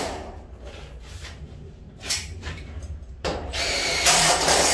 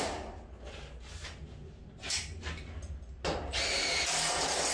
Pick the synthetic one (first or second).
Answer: first